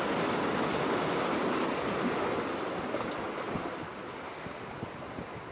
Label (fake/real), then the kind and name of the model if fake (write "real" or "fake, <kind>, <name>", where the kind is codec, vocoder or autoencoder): real